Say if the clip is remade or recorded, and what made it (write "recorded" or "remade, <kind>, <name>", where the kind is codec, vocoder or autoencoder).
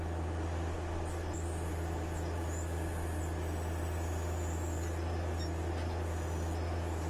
recorded